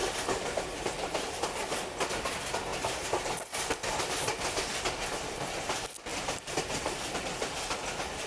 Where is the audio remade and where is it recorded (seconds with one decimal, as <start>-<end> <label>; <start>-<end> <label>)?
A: 0.0-6.1 recorded; 6.1-7.2 remade; 7.2-8.3 recorded